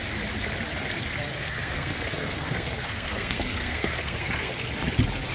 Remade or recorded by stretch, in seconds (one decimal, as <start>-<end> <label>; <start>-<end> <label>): 0.0-1.3 recorded; 1.3-4.5 remade; 4.5-5.3 recorded

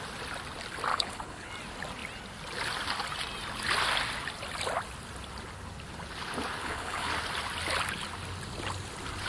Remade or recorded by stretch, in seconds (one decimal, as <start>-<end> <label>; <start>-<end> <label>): 0.0-0.9 recorded; 0.9-1.5 remade; 1.5-6.6 recorded; 6.6-7.1 remade; 7.1-9.3 recorded

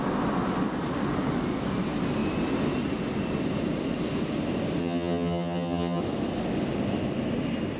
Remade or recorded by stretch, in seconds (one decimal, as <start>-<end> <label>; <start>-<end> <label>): 0.0-4.8 recorded; 4.8-6.0 remade; 6.0-7.8 recorded

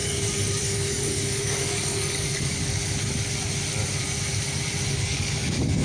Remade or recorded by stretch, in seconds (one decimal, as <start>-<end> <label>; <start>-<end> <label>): 0.0-2.6 remade; 2.6-4.9 recorded; 4.9-5.8 remade

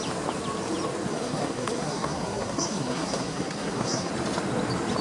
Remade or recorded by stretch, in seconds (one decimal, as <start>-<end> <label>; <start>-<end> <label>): 0.0-1.1 recorded; 1.1-4.1 remade; 4.1-5.0 recorded